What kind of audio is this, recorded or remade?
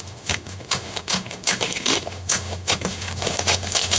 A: remade